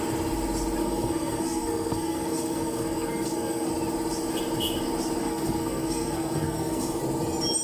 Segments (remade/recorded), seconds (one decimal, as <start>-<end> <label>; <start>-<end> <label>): 0.0-0.8 recorded; 0.8-3.7 remade; 3.7-5.2 recorded; 5.2-7.0 remade; 7.0-7.6 recorded